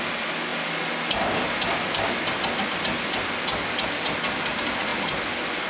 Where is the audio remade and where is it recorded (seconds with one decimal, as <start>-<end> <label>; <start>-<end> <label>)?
0.0-5.7 recorded